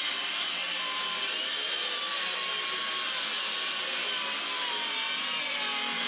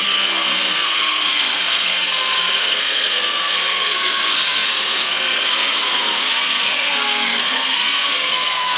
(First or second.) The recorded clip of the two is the first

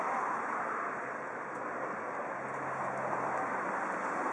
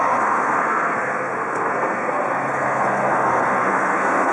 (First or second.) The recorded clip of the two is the first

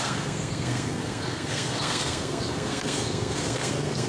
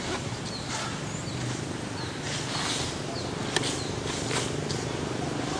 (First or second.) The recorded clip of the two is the second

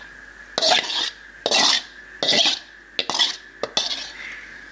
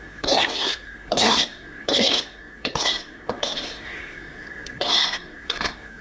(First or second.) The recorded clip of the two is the first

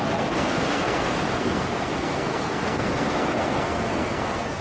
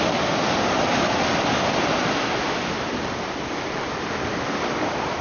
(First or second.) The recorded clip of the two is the second